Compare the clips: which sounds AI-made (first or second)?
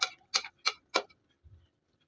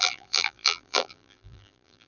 second